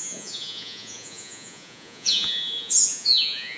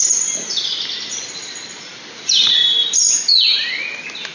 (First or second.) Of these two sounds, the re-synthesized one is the first